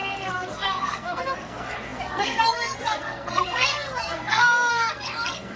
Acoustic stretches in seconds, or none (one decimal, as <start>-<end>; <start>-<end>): none